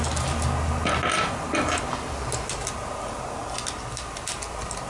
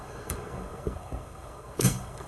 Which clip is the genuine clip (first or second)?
first